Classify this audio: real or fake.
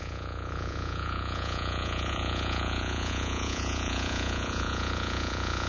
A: fake